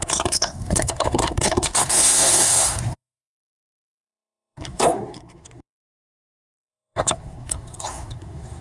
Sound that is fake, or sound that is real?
fake